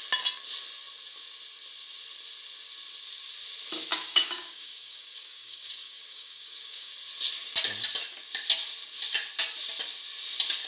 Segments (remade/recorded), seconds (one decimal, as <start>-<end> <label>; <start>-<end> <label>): 0.0-3.9 recorded; 3.9-6.9 remade; 6.9-10.7 recorded